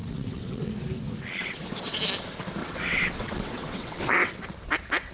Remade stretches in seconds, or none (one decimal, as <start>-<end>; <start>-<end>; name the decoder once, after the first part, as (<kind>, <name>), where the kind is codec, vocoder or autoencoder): 0.0-0.7 (vocoder, WaveNeXt); 1.4-2.0; 2.6-4.3